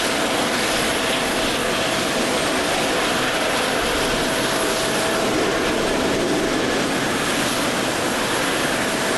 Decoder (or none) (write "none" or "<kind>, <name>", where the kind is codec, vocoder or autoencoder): none